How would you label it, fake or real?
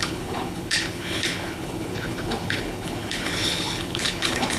fake